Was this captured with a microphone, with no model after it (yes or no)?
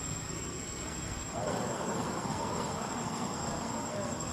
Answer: no